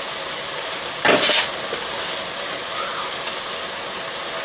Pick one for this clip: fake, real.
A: real